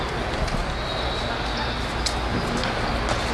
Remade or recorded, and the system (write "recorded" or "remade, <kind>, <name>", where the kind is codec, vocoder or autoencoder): recorded